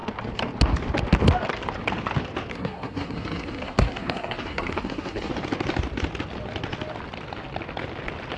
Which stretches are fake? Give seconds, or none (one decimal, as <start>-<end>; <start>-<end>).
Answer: 2.5-5.3